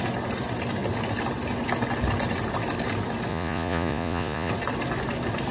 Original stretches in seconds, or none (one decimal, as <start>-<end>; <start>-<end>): 0.0-3.3; 4.5-5.5